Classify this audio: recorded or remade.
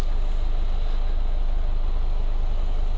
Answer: recorded